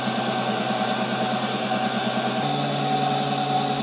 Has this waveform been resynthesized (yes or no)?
no